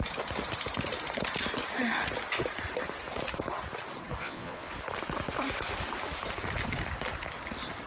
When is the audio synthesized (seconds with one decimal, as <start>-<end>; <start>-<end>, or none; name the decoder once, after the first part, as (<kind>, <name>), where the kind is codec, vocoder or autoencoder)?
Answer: 4.2-4.7 (vocoder, Vocos)